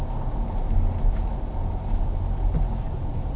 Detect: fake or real real